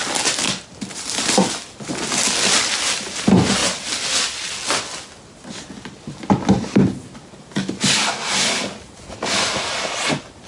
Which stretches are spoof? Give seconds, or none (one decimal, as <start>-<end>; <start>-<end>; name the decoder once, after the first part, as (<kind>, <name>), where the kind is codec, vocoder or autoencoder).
none